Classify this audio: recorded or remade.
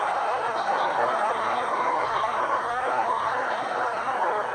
remade